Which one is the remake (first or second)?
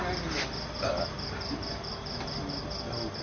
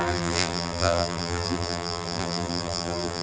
second